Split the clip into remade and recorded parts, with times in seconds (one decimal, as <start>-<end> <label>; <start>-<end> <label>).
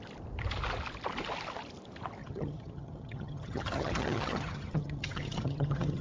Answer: 0.0-2.2 recorded; 2.2-6.0 remade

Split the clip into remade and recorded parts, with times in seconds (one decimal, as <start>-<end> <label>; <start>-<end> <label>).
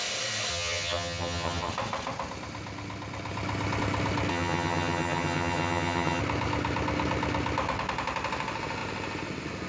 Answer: 0.0-0.5 recorded; 0.5-1.7 remade; 1.7-4.3 recorded; 4.3-6.2 remade; 6.2-9.7 recorded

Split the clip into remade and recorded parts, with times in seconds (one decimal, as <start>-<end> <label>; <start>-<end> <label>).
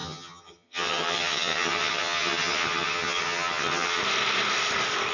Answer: 0.0-4.0 remade; 4.0-5.1 recorded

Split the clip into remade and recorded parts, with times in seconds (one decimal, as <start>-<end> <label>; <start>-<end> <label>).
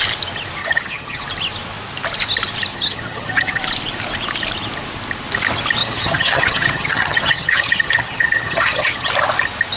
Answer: 0.0-0.6 recorded; 0.6-1.2 remade; 1.2-2.7 recorded; 2.7-3.6 remade; 3.6-5.8 recorded; 5.8-9.1 remade; 9.1-9.8 recorded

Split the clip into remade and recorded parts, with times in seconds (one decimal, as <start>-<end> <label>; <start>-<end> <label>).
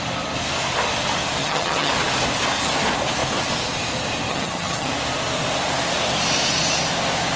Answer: 0.0-1.4 recorded; 1.4-1.9 remade; 1.9-4.3 recorded; 4.3-4.9 remade; 4.9-7.4 recorded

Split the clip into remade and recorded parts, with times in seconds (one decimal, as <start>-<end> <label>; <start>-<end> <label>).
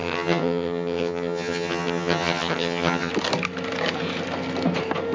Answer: 0.0-3.1 remade; 3.1-5.1 recorded